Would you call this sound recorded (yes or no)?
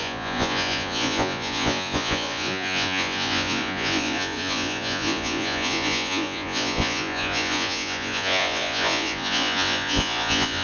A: no